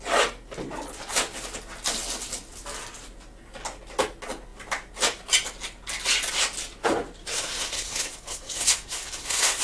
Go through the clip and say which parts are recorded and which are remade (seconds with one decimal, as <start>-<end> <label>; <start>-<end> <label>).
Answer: 0.0-7.2 recorded; 7.2-9.6 remade